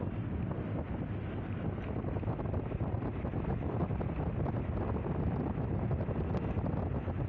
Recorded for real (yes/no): yes